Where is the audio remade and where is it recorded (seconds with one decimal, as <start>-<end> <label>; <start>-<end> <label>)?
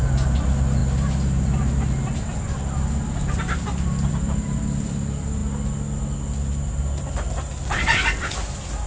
0.0-8.9 recorded